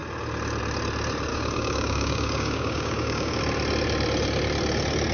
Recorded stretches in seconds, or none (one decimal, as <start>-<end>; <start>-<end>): 0.0-1.3; 3.4-5.1